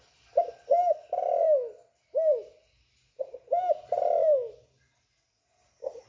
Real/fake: real